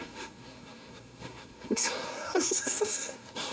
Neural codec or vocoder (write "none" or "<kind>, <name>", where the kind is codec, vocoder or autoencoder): codec, SNAC